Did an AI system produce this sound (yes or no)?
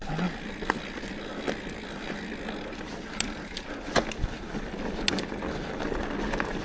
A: no